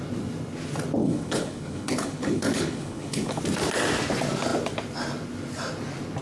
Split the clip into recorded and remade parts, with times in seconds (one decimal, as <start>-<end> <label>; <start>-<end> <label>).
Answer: 0.0-1.0 recorded; 1.0-3.4 remade; 3.4-6.2 recorded